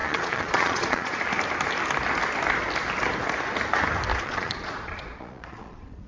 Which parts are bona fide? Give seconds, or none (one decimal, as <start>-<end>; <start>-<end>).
1.2-4.1